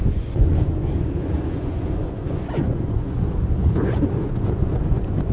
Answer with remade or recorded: remade